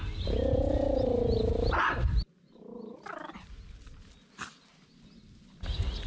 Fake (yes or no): no